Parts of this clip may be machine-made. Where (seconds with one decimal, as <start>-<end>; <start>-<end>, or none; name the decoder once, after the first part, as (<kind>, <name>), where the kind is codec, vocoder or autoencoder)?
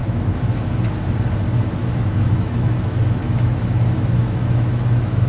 0.0-0.7 (autoencoder, DAC-VAE); 1.8-5.3